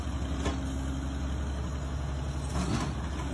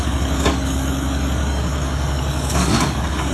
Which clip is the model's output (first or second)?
second